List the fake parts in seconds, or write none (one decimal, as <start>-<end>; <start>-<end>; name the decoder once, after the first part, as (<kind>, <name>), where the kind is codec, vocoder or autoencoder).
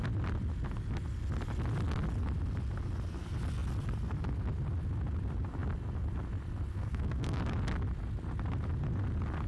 6.7-7.4 (codec, SNAC)